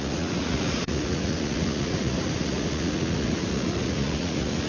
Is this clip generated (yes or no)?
yes